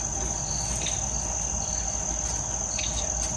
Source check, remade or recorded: recorded